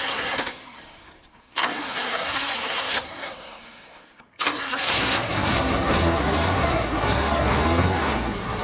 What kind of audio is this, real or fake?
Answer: fake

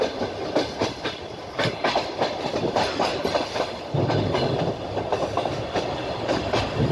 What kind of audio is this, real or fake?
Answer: real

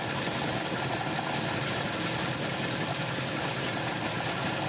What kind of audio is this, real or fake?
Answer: real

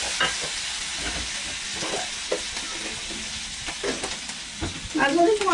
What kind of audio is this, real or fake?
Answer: real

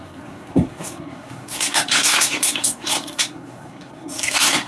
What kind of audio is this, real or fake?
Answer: fake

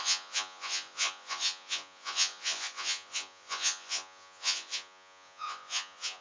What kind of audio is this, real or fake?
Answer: fake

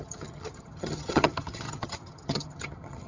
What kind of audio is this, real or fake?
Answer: fake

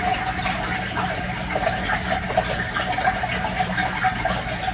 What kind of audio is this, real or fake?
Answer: real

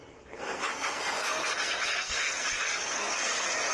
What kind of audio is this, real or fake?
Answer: fake